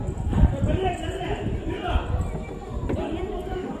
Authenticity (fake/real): real